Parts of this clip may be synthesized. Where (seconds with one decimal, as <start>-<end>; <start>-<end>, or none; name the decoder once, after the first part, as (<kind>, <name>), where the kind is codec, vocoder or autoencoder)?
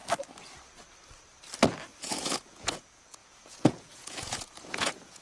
2.0-5.2 (vocoder, Vocos)